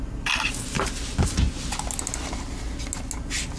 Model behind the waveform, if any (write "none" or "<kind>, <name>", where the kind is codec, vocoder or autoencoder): none